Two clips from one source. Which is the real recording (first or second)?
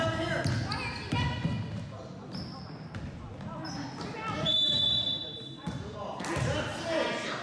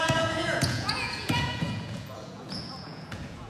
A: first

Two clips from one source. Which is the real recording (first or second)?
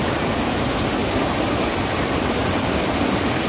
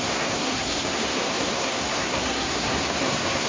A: first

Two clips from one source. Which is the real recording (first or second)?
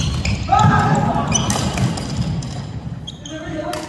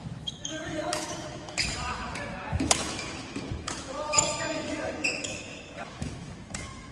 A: first